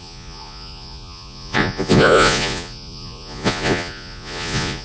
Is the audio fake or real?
fake